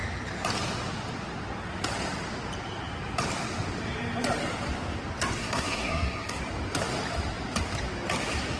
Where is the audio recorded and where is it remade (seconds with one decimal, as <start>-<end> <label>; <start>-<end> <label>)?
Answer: 0.0-5.4 recorded; 5.4-6.4 remade; 6.4-8.6 recorded